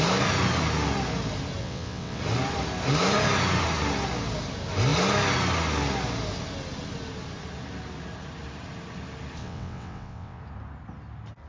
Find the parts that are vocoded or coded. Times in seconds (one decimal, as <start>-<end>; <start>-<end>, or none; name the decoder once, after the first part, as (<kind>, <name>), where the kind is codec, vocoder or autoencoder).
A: 1.6-2.2 (vocoder, WaveNeXt); 9.4-10.4